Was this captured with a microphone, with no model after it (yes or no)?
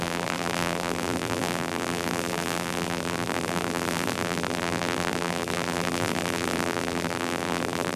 no